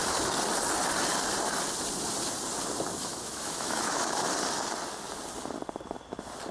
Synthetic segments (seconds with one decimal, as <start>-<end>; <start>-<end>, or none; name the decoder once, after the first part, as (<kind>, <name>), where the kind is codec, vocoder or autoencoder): 3.0-4.3 (autoencoder, DAC-VAE)